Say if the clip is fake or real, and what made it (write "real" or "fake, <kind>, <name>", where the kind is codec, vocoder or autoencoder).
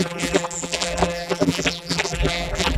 fake, vocoder, BigVGAN v2